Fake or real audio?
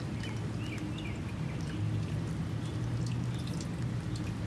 real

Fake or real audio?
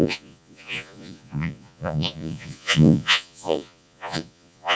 fake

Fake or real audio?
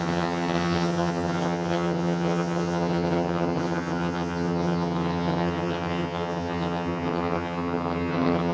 fake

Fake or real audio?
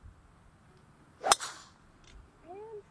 real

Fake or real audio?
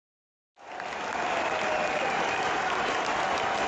real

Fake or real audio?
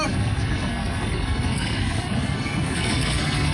fake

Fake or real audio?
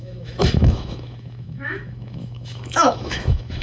fake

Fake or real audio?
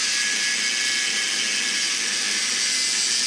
real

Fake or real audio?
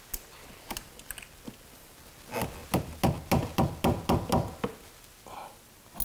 real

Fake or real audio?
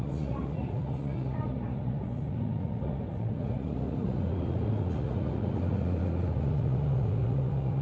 fake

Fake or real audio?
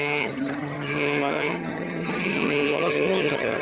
fake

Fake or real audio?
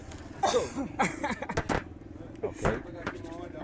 real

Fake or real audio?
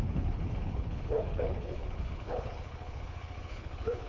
fake